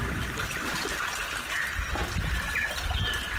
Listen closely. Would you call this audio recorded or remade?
recorded